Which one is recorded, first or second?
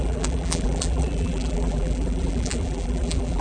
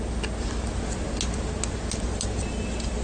second